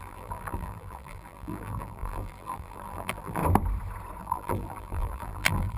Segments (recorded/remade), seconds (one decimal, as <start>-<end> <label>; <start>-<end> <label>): 0.0-3.4 remade; 3.4-4.2 recorded; 4.2-5.8 remade